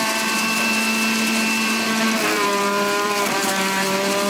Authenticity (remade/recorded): remade